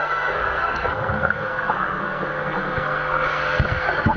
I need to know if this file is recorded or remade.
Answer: remade